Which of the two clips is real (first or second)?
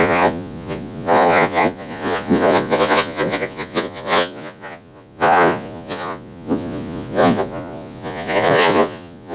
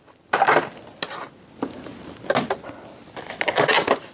second